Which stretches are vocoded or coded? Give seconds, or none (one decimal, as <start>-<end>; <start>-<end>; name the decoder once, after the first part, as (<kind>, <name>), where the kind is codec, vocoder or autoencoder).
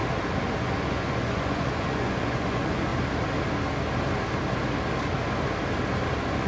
0.6-2.9 (vocoder, Vocos); 6.1-6.5